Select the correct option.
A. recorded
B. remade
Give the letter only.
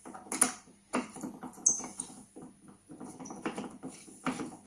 A